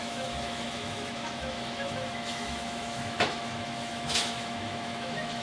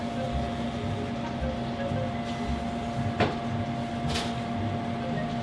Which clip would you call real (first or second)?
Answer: second